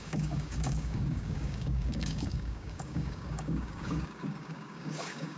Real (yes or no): no